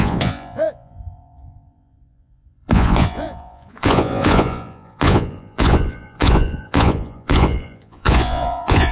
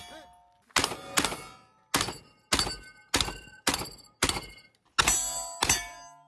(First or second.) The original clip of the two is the second